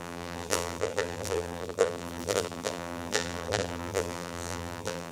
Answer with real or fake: fake